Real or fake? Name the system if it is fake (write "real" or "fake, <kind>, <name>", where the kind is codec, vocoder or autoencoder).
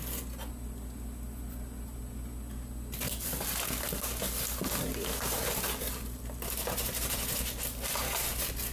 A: real